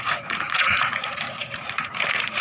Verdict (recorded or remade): remade